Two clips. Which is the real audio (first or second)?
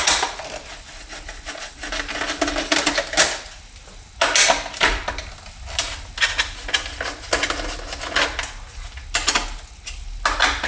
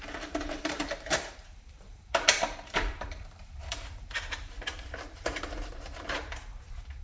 first